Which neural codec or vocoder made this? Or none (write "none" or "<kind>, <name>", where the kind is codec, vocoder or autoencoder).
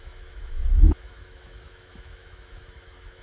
autoencoder, DAC-VAE